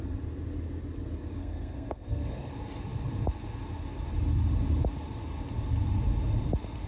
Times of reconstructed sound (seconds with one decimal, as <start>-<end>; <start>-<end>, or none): 1.4-2.5